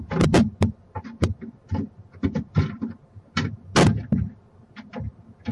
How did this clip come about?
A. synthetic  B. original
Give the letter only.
B